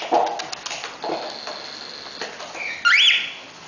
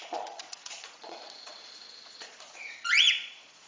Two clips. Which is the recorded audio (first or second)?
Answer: first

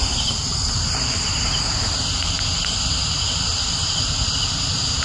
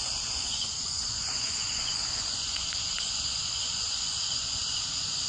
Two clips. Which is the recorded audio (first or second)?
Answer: first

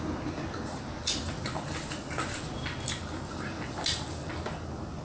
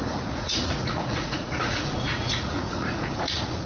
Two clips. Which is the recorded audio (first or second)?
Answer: first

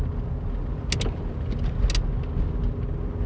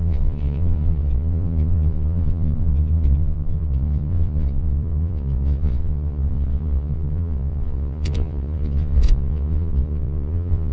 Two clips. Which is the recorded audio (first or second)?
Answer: first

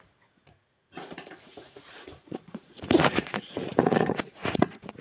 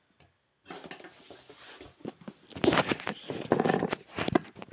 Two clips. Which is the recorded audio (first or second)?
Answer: second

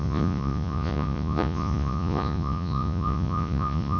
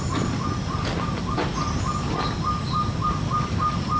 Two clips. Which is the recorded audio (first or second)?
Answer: second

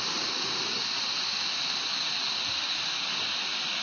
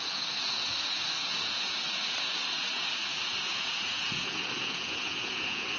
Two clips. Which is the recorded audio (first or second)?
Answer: first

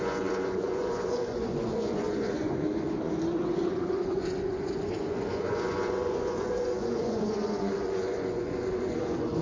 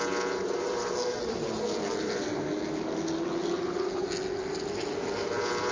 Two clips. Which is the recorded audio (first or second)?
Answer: second